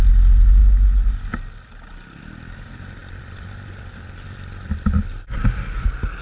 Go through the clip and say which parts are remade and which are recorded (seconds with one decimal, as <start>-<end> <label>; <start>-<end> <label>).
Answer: 0.0-3.0 recorded; 3.0-5.0 remade; 5.0-6.2 recorded